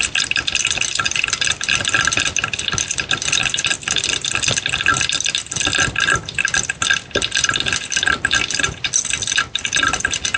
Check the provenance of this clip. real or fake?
real